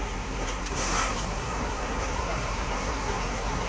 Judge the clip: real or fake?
fake